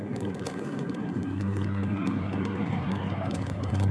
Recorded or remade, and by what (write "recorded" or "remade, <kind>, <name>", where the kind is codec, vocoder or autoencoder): remade, codec, SNAC